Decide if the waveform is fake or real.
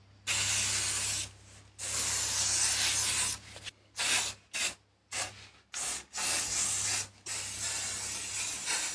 real